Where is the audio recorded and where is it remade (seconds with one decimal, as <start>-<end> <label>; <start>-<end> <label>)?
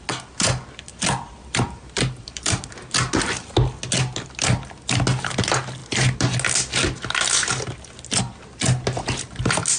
0.0-0.9 recorded; 0.9-2.6 remade; 2.6-9.8 recorded